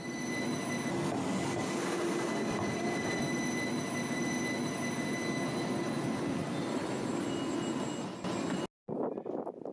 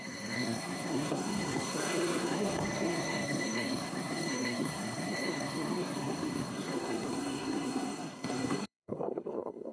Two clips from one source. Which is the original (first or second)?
first